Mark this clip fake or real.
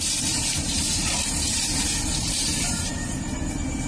fake